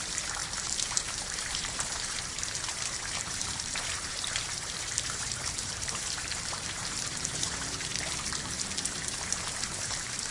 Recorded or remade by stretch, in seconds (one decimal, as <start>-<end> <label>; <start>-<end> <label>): 0.0-7.9 remade; 7.9-8.8 recorded; 8.8-10.3 remade